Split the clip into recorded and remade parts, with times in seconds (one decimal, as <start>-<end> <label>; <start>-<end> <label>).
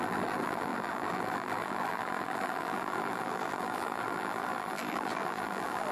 0.0-5.9 remade